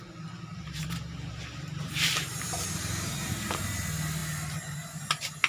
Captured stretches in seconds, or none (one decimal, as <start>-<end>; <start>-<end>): 0.0-0.5; 3.8-5.5